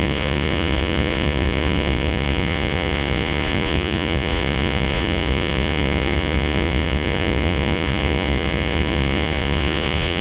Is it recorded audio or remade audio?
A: remade